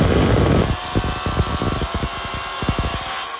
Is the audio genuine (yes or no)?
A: yes